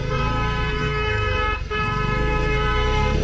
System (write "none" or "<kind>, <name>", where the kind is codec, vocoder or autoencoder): codec, SNAC